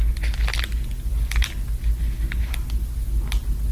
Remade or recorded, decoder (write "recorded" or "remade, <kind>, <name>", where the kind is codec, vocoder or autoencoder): recorded